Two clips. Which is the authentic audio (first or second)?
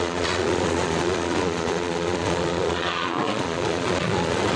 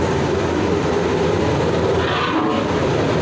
second